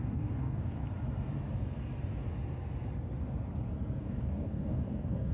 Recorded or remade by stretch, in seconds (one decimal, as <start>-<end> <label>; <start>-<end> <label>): 0.0-0.8 remade; 0.8-4.0 recorded; 4.0-5.3 remade